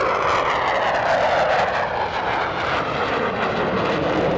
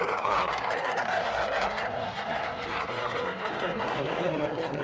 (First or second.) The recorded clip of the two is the first